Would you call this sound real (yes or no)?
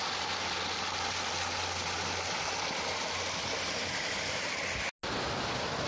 yes